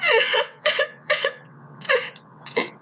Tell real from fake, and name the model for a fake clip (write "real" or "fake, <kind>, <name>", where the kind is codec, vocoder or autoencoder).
fake, vocoder, WaveNeXt